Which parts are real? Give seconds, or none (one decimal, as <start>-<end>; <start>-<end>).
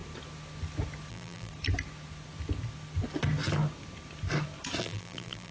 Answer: 0.0-1.1; 1.5-4.8